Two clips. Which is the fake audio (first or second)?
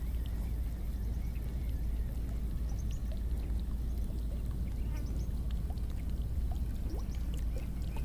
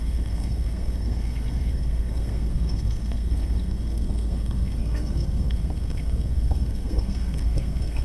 second